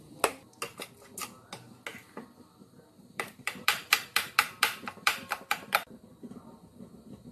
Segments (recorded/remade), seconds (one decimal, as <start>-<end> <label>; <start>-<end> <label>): 0.0-1.9 recorded; 1.9-6.3 remade; 6.3-7.3 recorded